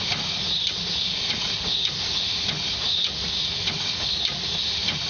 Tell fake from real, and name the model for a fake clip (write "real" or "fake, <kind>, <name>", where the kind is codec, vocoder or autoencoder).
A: real